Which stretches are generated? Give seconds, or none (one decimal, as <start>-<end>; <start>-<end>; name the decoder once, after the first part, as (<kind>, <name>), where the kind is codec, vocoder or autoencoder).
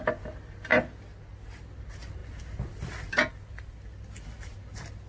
none